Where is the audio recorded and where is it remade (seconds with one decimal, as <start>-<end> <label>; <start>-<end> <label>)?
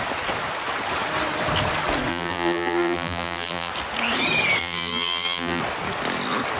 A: 0.0-2.1 recorded; 2.1-3.7 remade; 3.7-4.6 recorded; 4.6-5.6 remade; 5.6-6.6 recorded